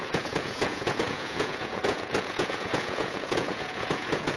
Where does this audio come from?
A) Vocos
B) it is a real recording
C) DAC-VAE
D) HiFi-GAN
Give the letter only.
A